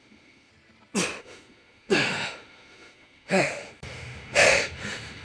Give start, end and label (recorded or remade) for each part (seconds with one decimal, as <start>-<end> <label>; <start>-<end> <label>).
0.0-0.5 remade; 0.5-1.2 recorded; 1.2-5.2 remade